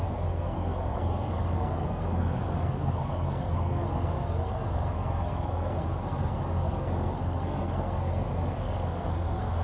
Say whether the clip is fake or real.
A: fake